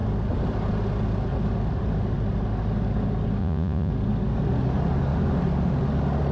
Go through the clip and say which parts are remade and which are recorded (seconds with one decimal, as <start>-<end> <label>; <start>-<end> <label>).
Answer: 0.0-3.4 recorded; 3.4-3.9 remade; 3.9-6.3 recorded